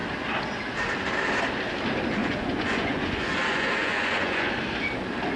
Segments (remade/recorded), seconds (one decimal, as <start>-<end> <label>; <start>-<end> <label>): 0.0-2.2 recorded; 2.2-4.5 remade; 4.5-5.4 recorded